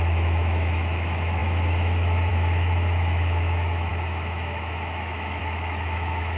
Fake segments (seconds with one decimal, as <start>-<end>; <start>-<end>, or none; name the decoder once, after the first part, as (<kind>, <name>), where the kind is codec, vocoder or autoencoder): 0.0-6.4 (autoencoder, DAC-VAE)